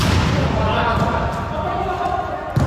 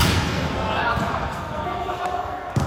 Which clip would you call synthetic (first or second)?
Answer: second